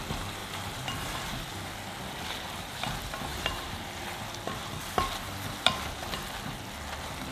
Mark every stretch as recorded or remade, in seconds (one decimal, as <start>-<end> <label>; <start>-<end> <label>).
0.0-0.4 recorded; 0.4-1.3 remade; 1.3-3.3 recorded; 3.3-3.8 remade; 3.8-7.3 recorded